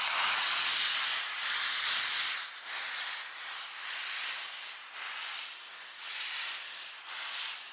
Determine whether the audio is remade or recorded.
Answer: recorded